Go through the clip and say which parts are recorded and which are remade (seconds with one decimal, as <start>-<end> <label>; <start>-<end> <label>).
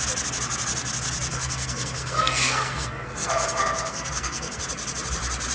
0.0-1.3 recorded; 1.3-4.6 remade; 4.6-5.5 recorded